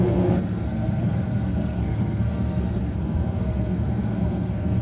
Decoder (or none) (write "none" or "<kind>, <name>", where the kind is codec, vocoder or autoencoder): codec, SNAC